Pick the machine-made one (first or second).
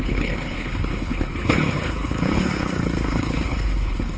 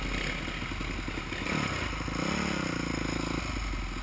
first